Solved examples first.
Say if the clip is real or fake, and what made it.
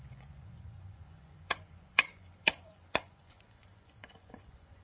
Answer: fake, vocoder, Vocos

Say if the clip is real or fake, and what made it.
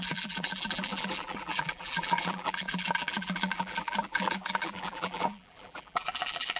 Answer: fake, vocoder, BigVGAN v2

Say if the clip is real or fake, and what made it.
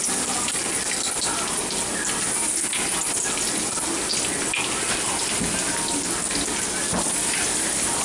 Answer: real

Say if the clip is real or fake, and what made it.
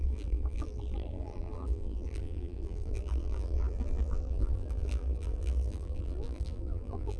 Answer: fake, vocoder, BigVGAN v2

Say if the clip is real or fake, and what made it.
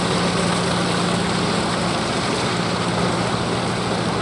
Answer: real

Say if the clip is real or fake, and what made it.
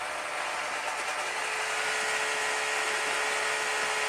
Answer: real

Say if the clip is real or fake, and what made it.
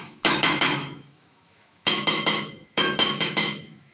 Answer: fake, autoencoder, DAC-VAE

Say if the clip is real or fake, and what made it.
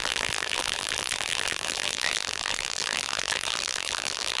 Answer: fake, vocoder, BigVGAN v2